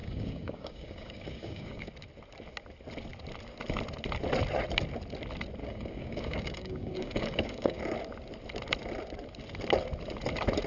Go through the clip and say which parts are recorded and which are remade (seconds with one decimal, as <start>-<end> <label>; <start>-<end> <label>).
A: 0.0-1.9 remade; 1.9-5.6 recorded; 5.6-7.8 remade; 7.8-10.7 recorded